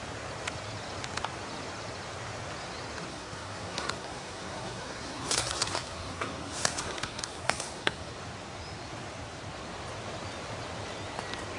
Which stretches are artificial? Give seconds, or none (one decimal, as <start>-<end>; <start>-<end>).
3.1-8.1

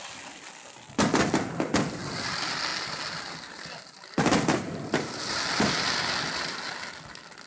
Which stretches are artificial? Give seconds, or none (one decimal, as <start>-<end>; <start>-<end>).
none

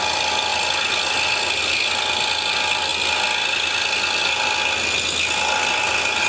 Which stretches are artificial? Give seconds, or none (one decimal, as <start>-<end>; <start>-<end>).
none

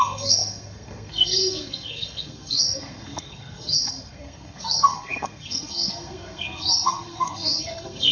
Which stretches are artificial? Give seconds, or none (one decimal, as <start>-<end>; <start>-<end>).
0.0-8.1

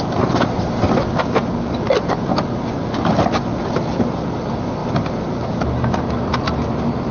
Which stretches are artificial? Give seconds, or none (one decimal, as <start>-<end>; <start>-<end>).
none